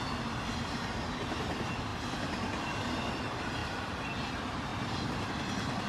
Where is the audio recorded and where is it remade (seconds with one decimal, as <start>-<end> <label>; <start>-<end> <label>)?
0.0-1.9 recorded; 1.9-3.2 remade; 3.2-3.6 recorded; 3.6-4.3 remade; 4.3-4.7 recorded; 4.7-5.3 remade; 5.3-5.9 recorded